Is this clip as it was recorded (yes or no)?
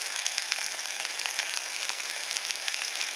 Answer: no